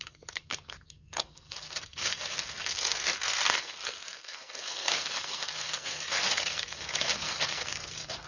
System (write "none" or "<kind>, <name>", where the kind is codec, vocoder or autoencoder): codec, SNAC